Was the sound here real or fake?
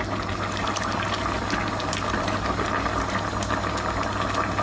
real